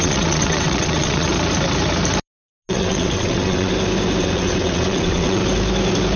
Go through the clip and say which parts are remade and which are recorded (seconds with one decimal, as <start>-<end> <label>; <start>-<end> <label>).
0.0-1.3 remade; 1.3-2.7 recorded; 2.7-3.7 remade; 3.7-4.2 recorded; 4.2-5.4 remade; 5.4-6.2 recorded